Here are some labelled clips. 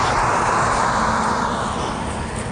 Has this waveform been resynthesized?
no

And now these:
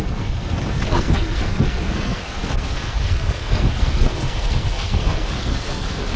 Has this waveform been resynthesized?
yes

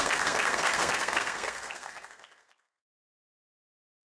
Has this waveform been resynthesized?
yes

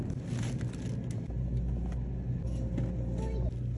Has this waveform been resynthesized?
no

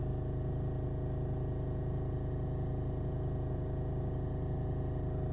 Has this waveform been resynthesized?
no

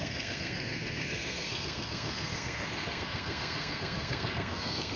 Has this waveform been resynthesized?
yes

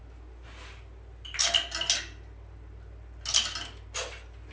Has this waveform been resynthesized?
no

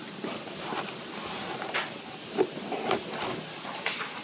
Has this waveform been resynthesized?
no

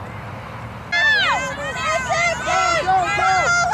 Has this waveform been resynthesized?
no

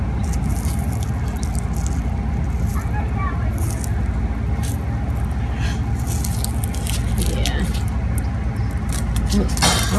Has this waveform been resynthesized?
no